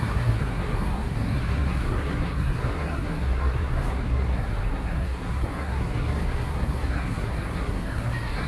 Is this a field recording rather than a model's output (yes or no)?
no